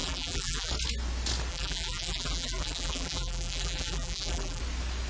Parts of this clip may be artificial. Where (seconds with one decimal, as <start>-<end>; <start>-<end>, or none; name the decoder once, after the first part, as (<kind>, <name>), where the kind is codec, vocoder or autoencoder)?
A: 0.0-0.7 (vocoder, BigVGAN v2); 1.5-4.6